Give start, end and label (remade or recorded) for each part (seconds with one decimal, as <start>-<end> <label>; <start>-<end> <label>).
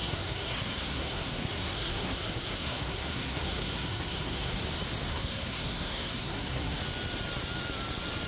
0.0-4.6 remade; 4.6-5.1 recorded; 5.1-6.8 remade; 6.8-8.3 recorded